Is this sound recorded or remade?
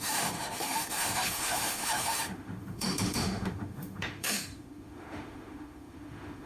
remade